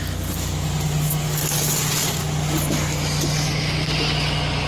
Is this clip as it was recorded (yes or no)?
yes